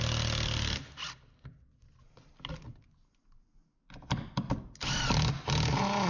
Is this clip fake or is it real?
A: real